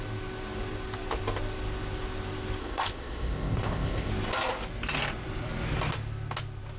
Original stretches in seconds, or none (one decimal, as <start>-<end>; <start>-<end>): 0.0-2.6; 4.1-6.8